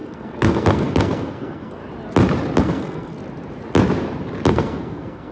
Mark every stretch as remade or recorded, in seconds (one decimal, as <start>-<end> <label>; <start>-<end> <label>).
0.0-1.8 remade; 1.8-2.6 recorded; 2.6-3.2 remade; 3.2-4.5 recorded; 4.5-5.3 remade